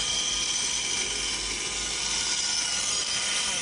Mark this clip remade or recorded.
recorded